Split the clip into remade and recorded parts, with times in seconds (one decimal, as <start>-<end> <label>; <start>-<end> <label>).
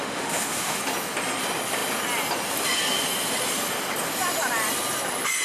0.0-0.8 remade; 0.8-5.4 recorded